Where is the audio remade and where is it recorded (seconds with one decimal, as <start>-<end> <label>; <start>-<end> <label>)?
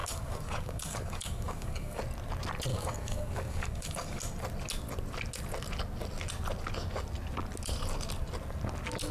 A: 0.0-2.0 remade; 2.0-2.7 recorded; 2.7-4.2 remade; 4.2-9.1 recorded